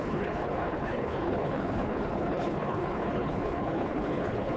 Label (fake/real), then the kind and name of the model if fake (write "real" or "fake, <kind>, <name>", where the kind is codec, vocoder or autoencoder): fake, codec, HILCodec